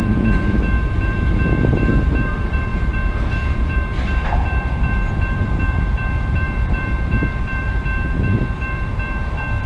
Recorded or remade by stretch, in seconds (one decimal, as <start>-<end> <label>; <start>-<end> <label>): 0.0-9.7 remade